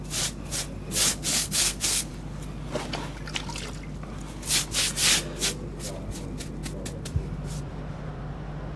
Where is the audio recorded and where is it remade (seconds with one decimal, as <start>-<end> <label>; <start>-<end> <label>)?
0.0-1.3 recorded; 1.3-2.1 remade; 2.1-8.8 recorded